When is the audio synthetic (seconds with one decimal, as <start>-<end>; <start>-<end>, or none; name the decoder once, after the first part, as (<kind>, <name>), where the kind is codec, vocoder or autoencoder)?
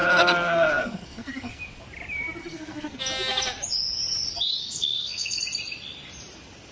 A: 0.0-1.6 (codec, SNAC); 2.4-3.0; 4.6-5.4